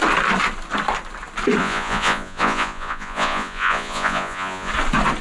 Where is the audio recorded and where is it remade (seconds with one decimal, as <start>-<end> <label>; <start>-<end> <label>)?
0.0-1.6 recorded; 1.6-4.7 remade; 4.7-5.2 recorded